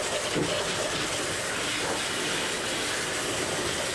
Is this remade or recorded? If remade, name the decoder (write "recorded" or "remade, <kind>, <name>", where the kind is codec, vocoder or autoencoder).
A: recorded